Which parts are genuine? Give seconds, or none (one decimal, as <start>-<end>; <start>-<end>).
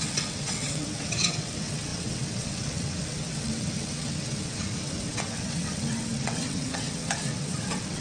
none